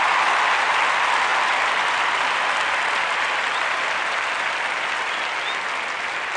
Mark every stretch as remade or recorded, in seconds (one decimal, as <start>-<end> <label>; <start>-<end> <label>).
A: 0.0-1.3 recorded; 1.3-5.1 remade; 5.1-6.4 recorded